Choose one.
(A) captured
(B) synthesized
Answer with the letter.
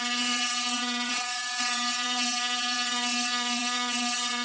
B